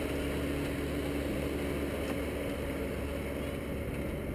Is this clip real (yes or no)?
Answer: yes